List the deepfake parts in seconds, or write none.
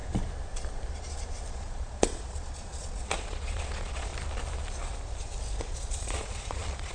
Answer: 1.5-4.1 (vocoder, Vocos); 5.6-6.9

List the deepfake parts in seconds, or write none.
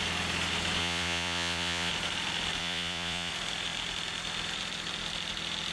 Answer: 0.8-1.9 (vocoder, Vocos); 2.6-3.3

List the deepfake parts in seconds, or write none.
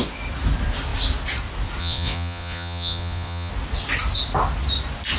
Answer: 1.8-3.5 (vocoder, Vocos)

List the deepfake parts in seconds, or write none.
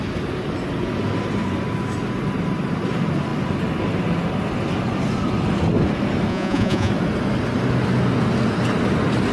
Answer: 6.3-6.9 (vocoder, Vocos)